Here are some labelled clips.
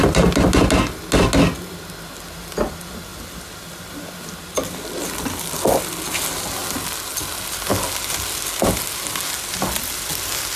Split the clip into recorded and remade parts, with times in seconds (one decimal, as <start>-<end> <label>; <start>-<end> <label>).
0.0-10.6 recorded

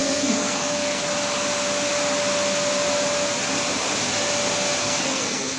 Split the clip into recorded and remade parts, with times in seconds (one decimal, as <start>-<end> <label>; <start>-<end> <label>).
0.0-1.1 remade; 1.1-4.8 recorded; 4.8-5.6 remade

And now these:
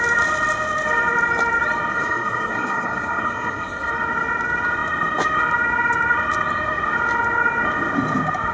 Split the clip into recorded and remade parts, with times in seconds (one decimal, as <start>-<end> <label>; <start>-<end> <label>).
0.0-1.9 recorded; 1.9-3.9 remade; 3.9-8.5 recorded